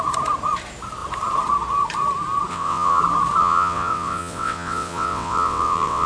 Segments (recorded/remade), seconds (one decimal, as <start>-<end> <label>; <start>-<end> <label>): 0.0-2.5 recorded; 2.5-3.0 remade; 3.0-3.4 recorded; 3.4-6.1 remade